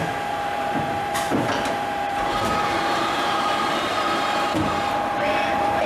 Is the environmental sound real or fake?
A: fake